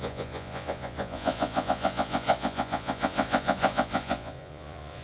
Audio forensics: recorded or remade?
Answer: remade